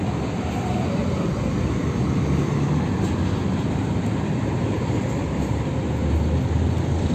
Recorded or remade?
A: recorded